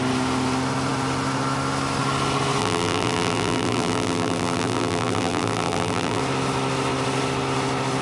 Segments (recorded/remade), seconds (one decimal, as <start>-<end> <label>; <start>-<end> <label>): 0.0-2.6 recorded; 2.6-6.2 remade; 6.2-8.0 recorded